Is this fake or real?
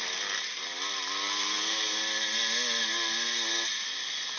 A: real